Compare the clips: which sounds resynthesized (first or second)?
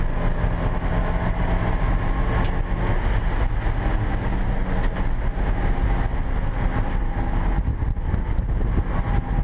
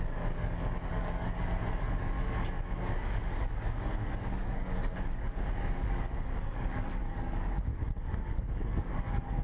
second